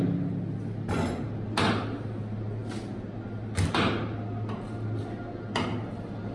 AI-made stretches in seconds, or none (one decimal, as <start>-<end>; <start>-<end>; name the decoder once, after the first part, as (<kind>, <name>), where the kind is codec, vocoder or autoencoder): none